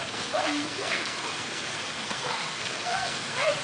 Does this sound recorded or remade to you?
remade